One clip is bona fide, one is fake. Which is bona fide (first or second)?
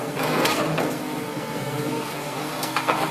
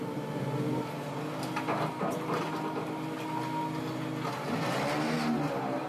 second